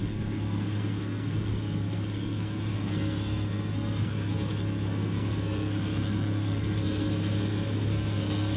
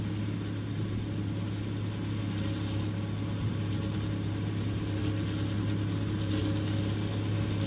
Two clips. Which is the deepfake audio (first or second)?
first